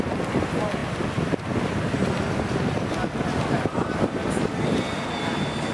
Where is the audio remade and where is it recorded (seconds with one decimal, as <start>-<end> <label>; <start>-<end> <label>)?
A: 0.0-5.7 recorded